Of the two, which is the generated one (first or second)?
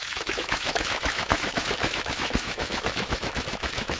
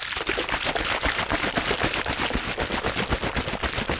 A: first